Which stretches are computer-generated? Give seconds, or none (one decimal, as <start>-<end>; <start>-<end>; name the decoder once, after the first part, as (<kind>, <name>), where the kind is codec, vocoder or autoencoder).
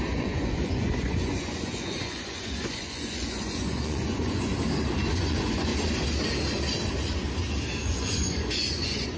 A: 0.0-4.5 (vocoder, Vocos); 5.1-5.7; 7.8-9.2